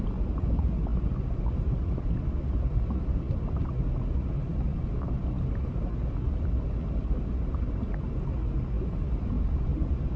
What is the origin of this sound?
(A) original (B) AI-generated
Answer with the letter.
A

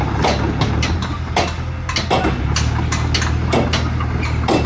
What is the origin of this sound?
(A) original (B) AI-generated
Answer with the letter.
A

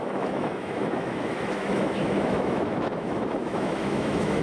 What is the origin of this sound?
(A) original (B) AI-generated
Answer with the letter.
B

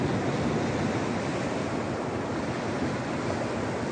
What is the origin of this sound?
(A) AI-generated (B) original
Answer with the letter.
B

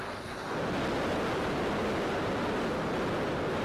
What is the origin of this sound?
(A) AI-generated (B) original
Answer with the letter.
B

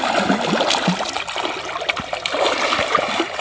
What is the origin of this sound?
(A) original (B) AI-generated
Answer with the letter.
A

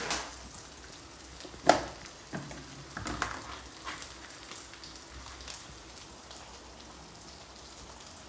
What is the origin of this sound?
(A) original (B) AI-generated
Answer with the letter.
A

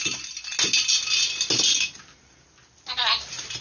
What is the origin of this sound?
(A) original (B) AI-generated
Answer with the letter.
A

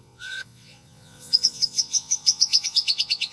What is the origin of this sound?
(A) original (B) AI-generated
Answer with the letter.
B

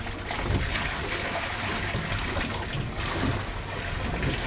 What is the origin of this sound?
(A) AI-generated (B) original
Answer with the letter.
B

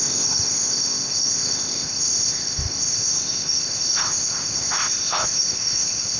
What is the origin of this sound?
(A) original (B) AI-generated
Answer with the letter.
B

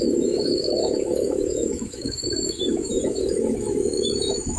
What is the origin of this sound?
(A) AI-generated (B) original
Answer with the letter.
A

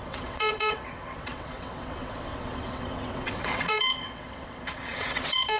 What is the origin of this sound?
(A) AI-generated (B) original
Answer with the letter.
A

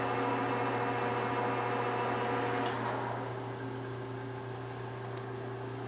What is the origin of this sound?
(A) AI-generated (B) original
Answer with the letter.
B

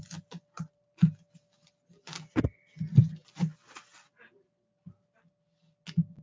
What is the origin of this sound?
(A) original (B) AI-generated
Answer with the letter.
A